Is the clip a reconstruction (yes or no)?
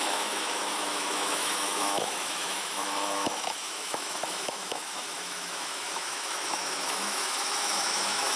yes